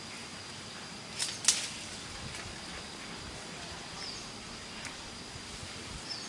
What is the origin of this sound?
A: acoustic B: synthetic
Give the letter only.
A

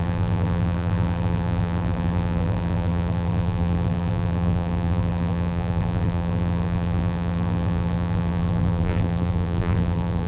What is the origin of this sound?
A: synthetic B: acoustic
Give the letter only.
A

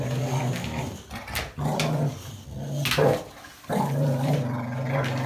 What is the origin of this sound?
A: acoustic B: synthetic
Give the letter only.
A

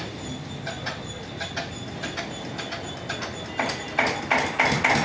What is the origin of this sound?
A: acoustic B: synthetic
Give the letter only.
A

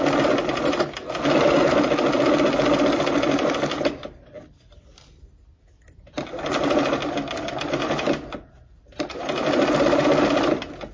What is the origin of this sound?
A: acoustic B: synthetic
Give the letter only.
A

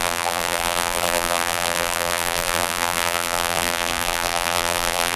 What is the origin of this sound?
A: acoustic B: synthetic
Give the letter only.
B